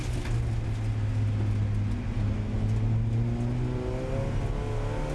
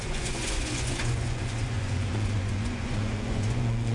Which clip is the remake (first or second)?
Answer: second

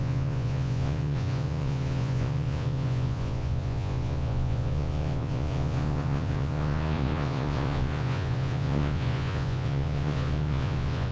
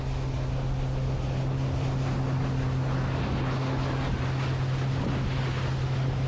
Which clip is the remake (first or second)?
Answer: first